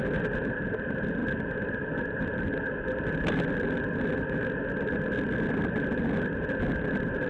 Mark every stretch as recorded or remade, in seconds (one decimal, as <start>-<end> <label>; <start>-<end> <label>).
0.0-7.3 recorded